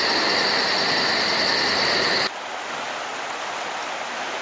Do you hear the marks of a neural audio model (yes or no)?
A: no